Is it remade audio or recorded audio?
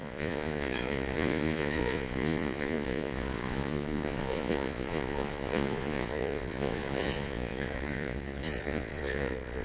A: remade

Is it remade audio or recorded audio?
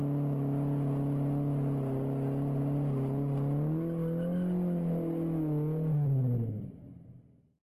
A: recorded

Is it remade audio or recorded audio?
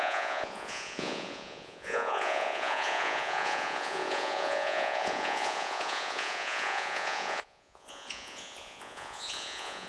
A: remade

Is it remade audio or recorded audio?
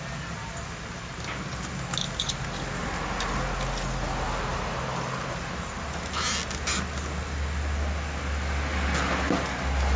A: recorded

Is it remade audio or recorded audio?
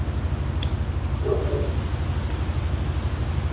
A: recorded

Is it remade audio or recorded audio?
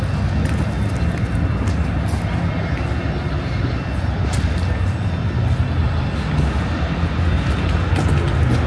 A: recorded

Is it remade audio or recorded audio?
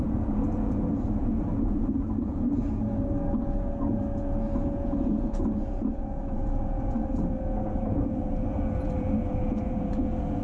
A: remade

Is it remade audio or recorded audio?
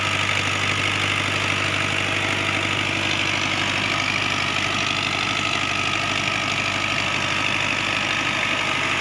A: recorded